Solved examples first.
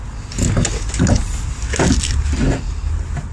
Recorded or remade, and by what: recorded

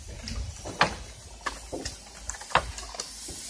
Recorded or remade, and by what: recorded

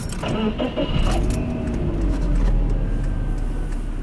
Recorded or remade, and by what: recorded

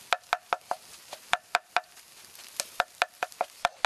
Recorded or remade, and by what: recorded